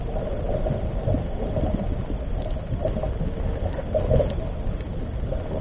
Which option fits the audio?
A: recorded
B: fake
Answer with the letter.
A